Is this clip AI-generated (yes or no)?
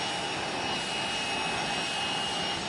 no